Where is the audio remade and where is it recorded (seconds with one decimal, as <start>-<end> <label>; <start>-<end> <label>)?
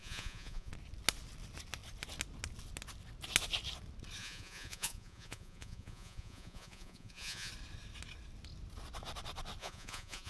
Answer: 0.0-0.7 remade; 0.7-4.2 recorded; 4.2-7.5 remade; 7.5-9.6 recorded; 9.6-10.3 remade